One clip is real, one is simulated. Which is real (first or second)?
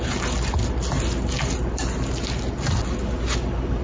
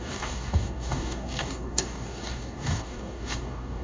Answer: first